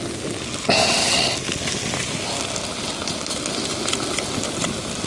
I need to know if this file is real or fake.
real